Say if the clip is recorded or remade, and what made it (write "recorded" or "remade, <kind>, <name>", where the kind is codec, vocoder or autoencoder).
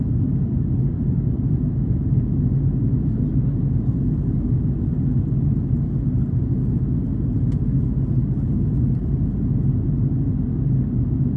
recorded